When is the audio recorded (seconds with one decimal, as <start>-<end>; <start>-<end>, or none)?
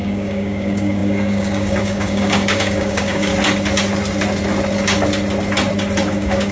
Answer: 3.3-6.1